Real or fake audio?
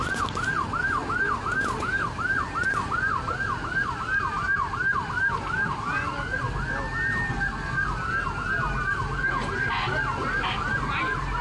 real